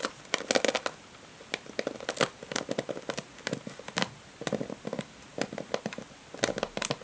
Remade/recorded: recorded